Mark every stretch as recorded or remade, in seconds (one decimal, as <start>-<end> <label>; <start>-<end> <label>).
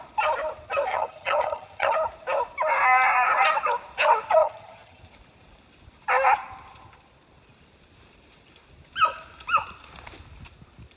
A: 0.0-0.9 recorded; 0.9-1.9 remade; 1.9-4.4 recorded; 4.4-5.0 remade; 5.0-11.0 recorded